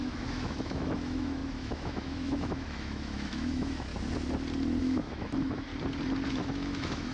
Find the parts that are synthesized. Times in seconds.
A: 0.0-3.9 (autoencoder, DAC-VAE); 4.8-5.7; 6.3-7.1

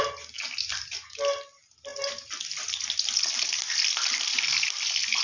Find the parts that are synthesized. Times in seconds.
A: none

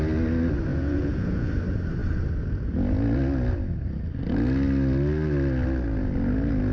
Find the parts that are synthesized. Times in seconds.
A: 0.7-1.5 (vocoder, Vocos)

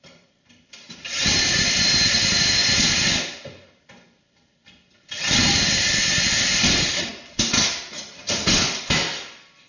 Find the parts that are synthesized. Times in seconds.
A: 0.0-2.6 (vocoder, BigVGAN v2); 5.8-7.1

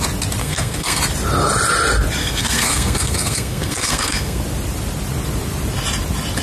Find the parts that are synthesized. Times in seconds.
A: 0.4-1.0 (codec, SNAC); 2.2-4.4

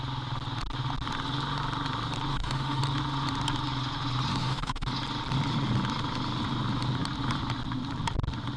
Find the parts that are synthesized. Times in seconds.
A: 2.3-2.8 (autoencoder, DAC-VAE); 4.3-4.9

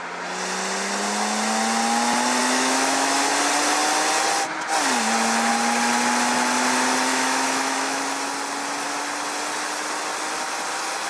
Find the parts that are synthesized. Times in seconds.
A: 2.4-3.3 (autoencoder, DAC-VAE); 7.1-8.0